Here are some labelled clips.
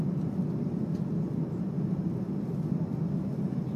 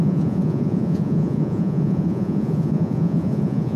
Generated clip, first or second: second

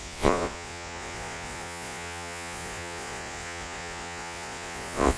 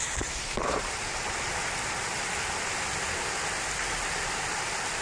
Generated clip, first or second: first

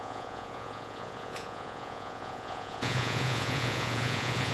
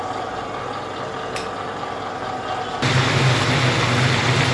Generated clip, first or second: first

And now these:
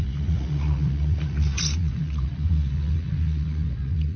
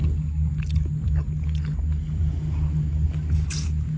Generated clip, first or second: first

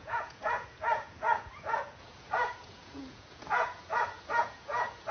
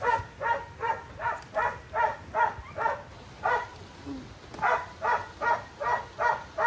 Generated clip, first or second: first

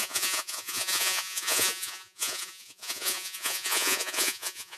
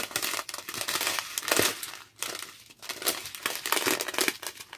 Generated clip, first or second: first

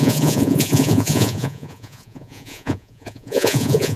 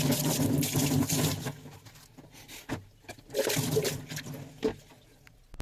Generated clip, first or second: first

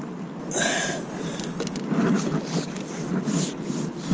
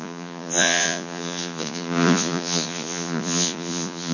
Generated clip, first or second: second